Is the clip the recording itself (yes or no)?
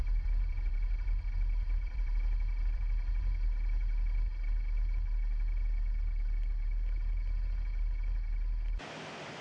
yes